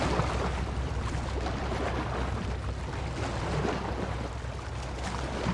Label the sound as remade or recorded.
recorded